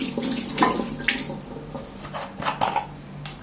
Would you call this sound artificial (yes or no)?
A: no